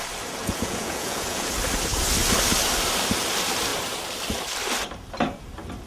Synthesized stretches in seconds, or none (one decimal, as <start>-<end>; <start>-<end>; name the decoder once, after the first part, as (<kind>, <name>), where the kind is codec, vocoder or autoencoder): 0.4-1.5 (vocoder, Vocos)